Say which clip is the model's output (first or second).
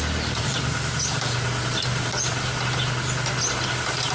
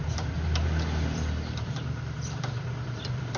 second